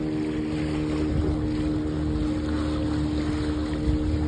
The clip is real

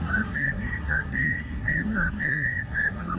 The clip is fake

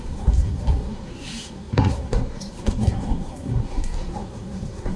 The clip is fake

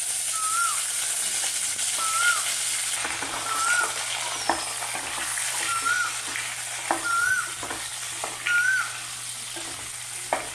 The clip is real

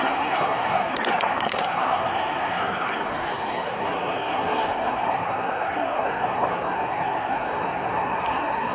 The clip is fake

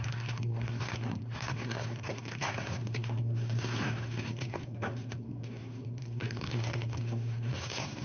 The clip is fake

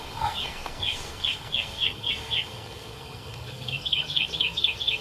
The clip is fake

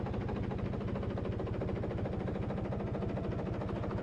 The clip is real